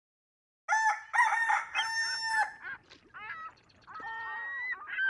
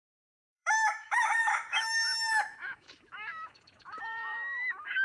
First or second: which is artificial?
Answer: second